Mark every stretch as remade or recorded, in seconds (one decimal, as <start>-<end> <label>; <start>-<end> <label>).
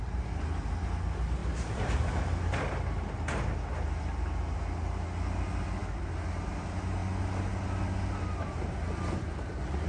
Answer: 0.0-1.4 recorded; 1.4-2.1 remade; 2.1-9.9 recorded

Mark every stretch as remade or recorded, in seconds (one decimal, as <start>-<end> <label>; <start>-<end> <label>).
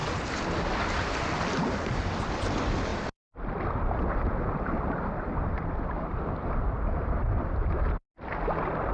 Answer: 0.0-2.4 recorded; 2.4-8.0 remade; 8.0-8.9 recorded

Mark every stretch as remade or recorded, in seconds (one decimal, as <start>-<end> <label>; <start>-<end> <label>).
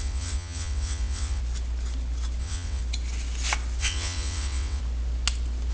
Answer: 0.0-1.4 remade; 1.4-2.4 recorded; 2.4-2.8 remade; 2.8-3.8 recorded; 3.8-4.8 remade; 4.8-5.7 recorded